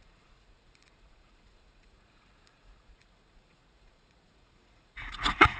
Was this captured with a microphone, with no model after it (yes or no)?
no